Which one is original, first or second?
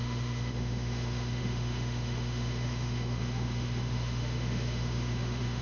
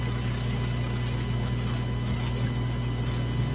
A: second